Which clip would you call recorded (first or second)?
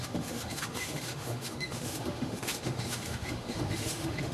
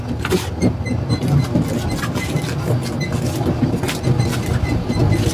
second